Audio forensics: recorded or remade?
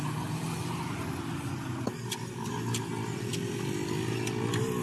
recorded